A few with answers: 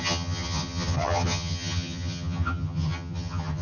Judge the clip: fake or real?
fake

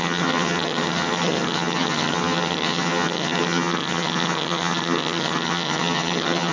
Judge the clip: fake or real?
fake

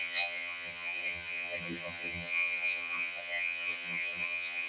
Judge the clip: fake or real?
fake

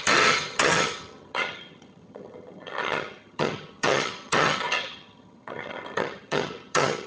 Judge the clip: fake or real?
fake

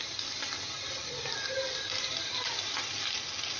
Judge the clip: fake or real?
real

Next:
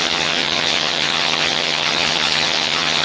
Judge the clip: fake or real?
fake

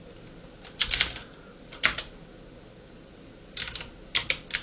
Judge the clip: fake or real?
real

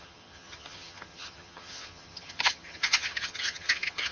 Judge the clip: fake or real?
fake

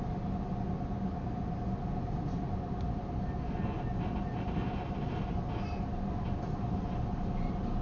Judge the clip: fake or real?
real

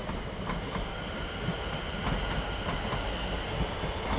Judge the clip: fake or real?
real